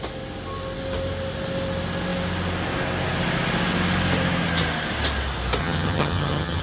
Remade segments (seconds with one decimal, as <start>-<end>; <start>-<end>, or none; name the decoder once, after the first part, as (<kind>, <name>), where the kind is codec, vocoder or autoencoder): 5.6-6.6 (vocoder, HiFi-GAN)